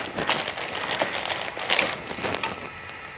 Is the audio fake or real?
real